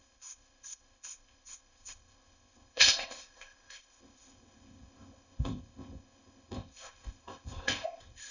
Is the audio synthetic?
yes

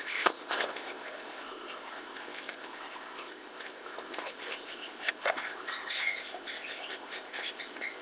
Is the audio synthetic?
yes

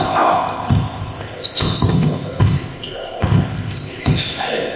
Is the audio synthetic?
yes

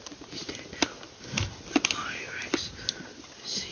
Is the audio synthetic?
no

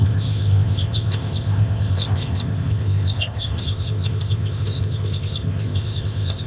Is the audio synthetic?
yes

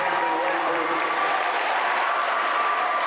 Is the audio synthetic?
no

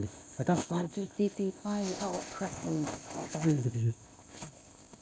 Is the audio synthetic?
yes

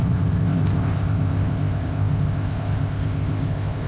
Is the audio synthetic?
yes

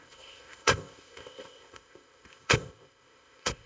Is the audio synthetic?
yes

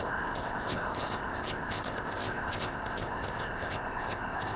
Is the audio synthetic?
yes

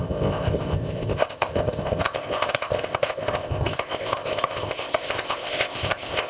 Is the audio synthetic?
yes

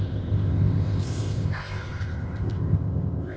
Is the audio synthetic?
yes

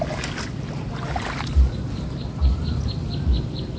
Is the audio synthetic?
no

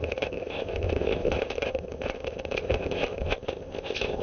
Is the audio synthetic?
yes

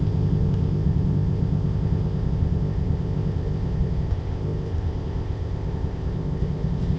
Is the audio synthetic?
yes